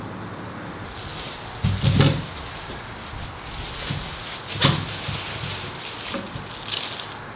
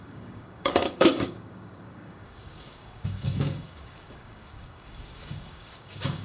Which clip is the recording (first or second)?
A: first